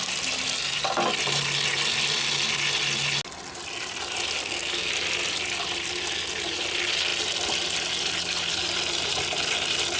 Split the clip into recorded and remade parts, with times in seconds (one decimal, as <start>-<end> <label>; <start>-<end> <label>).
0.0-4.4 recorded; 4.4-4.9 remade; 4.9-10.0 recorded